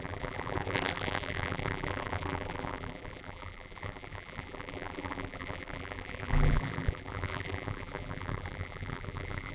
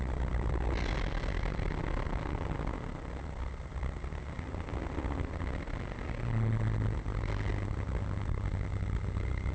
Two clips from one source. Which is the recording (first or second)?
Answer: second